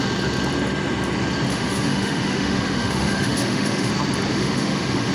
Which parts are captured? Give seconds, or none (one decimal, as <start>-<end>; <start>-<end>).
0.0-1.5; 3.9-4.3